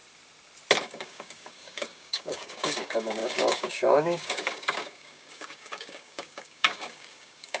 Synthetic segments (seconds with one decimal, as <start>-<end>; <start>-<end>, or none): 0.8-7.6